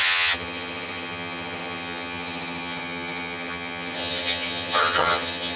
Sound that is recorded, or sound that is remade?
remade